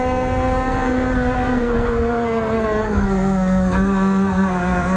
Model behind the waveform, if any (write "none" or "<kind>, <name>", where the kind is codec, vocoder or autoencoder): codec, SNAC